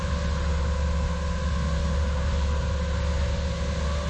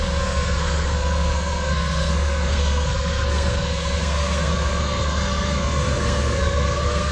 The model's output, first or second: second